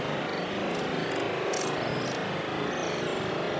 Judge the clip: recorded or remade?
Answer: recorded